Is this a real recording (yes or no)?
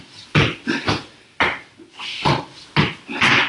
yes